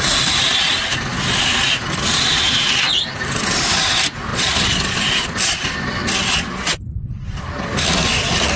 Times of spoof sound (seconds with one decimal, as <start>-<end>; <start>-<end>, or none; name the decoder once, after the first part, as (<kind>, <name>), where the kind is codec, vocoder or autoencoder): 4.3-5.0 (vocoder, Vocos)